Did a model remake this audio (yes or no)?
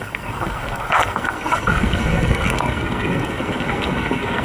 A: yes